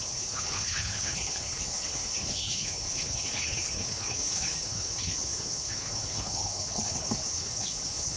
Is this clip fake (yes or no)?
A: yes